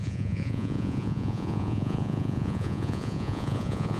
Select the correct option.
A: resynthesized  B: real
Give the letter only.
A